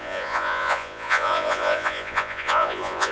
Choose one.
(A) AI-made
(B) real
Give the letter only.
A